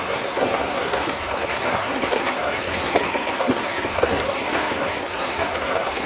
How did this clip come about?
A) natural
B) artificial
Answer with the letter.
B